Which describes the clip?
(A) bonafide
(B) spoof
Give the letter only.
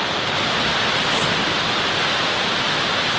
A